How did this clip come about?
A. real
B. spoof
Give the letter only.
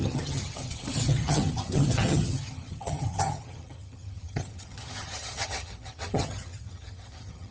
B